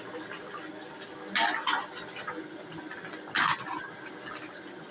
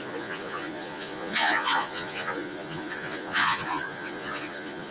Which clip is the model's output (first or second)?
second